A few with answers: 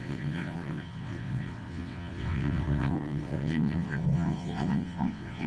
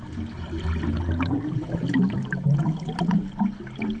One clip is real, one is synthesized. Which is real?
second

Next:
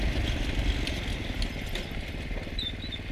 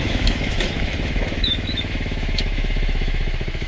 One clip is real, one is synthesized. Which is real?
first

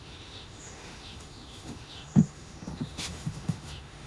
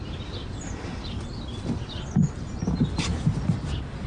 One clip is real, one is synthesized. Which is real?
second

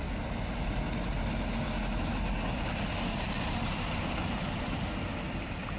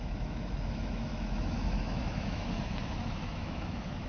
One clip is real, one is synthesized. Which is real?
first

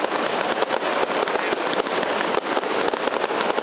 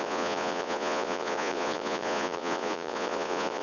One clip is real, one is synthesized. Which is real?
first